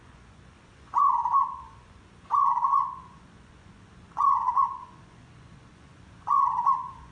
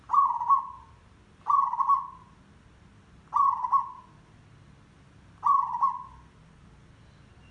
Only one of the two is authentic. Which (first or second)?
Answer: second